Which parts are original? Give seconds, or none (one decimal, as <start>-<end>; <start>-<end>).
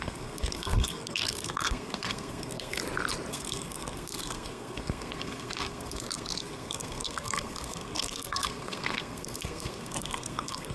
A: 2.8-3.3